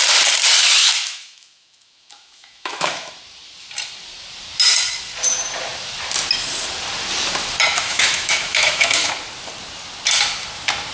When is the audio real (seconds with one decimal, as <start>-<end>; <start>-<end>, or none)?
0.0-0.8; 3.1-7.7; 9.1-10.9